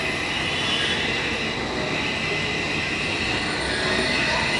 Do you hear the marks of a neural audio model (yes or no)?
no